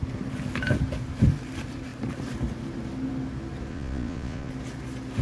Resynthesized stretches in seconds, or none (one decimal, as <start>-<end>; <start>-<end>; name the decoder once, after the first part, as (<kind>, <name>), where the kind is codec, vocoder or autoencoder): 3.7-4.5 (vocoder, Vocos)